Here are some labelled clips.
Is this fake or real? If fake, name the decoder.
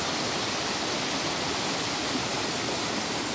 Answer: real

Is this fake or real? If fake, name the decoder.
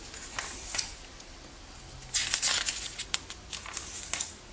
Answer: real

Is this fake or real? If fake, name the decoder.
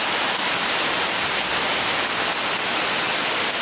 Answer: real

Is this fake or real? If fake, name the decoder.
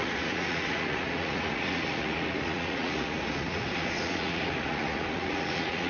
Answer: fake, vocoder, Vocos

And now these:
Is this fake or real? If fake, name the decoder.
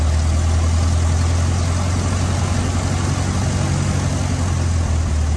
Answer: real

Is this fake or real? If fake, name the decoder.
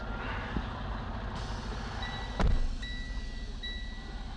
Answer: real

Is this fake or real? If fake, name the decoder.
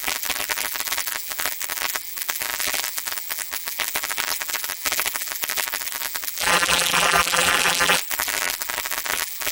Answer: fake, vocoder, BigVGAN v2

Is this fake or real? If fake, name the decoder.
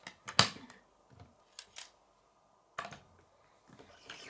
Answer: real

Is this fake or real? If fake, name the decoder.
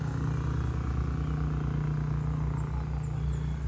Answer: real